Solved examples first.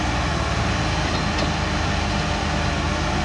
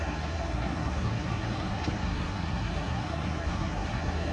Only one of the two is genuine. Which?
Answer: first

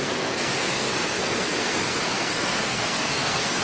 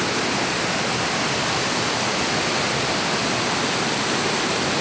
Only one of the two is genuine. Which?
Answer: second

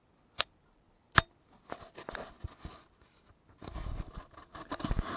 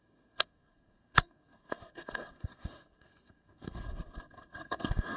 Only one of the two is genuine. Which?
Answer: first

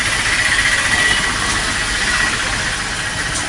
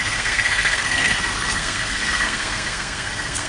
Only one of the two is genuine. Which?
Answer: first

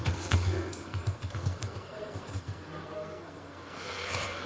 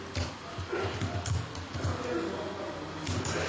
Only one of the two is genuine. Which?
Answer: second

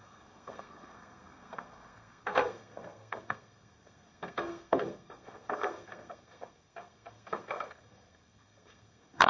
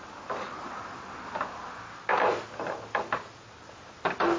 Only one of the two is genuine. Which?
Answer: second